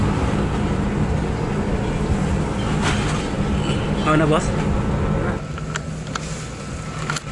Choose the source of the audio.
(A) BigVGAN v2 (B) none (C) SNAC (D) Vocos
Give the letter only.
B